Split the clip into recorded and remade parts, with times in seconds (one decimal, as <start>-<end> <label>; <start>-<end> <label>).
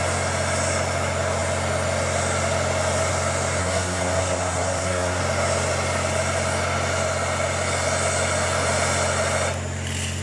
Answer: 0.0-3.6 recorded; 3.6-5.2 remade; 5.2-10.2 recorded